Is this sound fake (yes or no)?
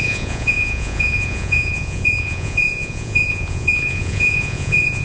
yes